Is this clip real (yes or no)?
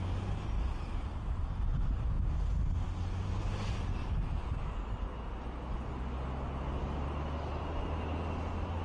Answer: yes